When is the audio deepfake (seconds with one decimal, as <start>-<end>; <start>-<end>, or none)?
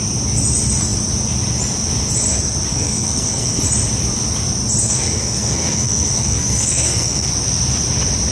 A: 2.7-3.6; 4.8-7.3